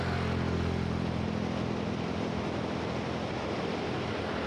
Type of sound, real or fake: real